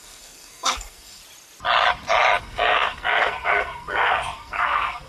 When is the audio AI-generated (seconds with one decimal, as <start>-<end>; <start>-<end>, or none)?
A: 0.0-1.2; 2.4-5.1